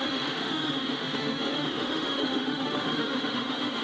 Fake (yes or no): yes